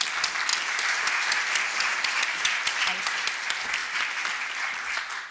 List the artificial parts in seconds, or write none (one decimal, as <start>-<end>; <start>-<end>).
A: none